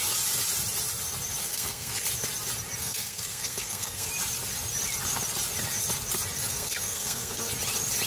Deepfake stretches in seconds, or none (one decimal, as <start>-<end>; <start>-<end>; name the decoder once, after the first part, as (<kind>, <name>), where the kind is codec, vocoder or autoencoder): 1.4-1.9 (codec, SNAC); 2.8-4.1; 6.5-7.5